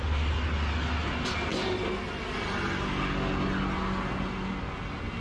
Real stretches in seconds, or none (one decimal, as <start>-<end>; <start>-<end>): 0.0-5.2